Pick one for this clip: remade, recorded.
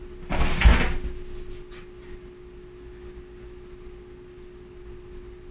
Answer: recorded